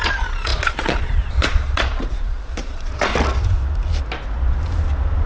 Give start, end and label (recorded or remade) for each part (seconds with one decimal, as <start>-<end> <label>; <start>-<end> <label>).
0.0-3.1 remade; 3.1-5.3 recorded